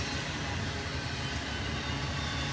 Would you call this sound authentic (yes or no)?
yes